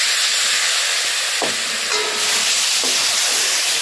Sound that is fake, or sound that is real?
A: real